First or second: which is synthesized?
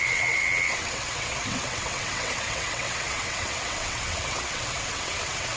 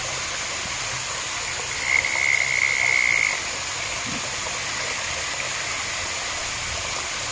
first